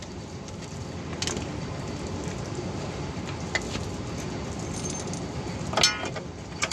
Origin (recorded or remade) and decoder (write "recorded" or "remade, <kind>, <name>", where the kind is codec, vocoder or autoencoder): recorded